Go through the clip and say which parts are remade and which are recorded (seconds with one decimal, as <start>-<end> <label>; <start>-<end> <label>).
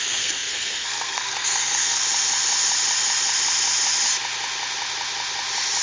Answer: 0.0-2.0 remade; 2.0-5.8 recorded